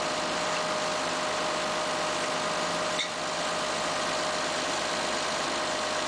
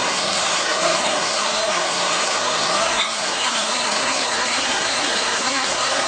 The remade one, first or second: second